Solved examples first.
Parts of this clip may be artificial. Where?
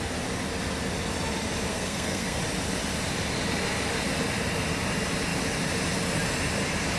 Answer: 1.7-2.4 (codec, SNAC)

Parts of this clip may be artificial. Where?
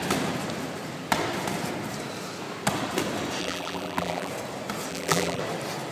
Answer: 3.4-4.3 (vocoder, BigVGAN v2); 4.9-5.4